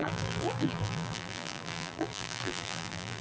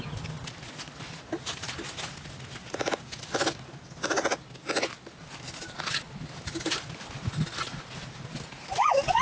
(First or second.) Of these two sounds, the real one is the second